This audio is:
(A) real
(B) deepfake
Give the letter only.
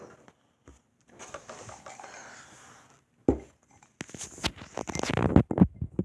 A